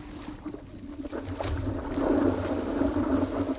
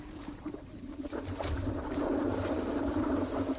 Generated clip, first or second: second